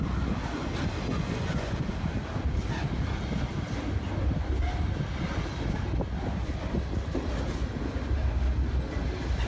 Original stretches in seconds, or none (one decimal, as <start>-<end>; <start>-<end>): 0.0-1.1; 1.9-9.5